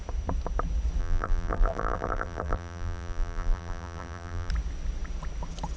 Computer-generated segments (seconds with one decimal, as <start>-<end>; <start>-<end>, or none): 1.0-4.5